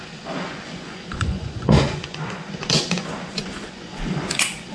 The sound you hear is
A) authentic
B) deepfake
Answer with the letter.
B